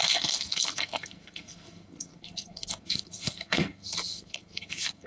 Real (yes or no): no